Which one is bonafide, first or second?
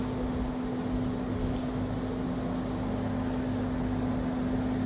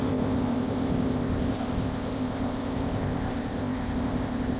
first